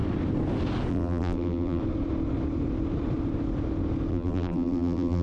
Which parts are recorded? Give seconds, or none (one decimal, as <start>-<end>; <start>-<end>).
0.0-0.9; 1.8-4.1